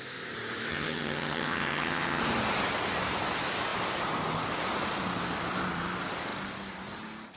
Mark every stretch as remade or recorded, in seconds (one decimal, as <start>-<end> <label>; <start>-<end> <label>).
0.0-0.7 recorded; 0.7-2.2 remade; 2.2-7.4 recorded